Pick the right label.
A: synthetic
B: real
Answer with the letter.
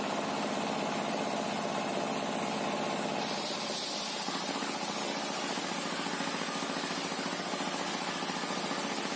B